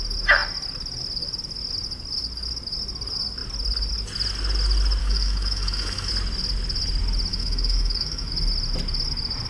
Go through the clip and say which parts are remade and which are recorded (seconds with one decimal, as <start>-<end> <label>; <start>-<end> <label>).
0.0-5.0 recorded; 5.0-6.1 remade; 6.1-7.3 recorded; 7.3-8.3 remade; 8.3-9.5 recorded